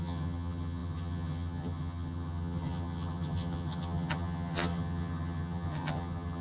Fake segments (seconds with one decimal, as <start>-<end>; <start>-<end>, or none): 0.0-6.4

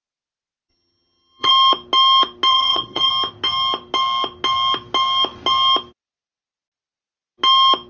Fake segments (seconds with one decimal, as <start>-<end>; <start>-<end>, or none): 0.7-1.5; 2.5-3.1